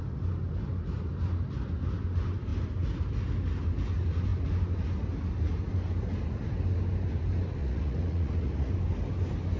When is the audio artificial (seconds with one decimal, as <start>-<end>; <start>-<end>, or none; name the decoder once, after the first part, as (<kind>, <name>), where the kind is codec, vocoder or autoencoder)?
7.6-8.7 (vocoder, Vocos)